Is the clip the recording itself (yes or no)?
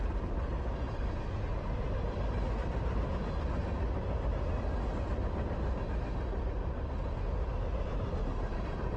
yes